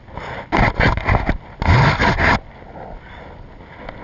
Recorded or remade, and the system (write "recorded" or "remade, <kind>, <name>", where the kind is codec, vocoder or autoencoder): recorded